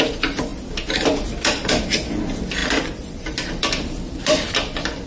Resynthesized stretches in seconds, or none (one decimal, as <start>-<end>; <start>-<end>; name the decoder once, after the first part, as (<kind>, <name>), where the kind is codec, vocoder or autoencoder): 0.5-1.8 (vocoder, BigVGAN v2); 2.6-4.5